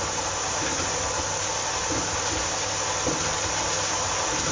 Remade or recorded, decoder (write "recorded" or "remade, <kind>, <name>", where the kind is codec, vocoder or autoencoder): recorded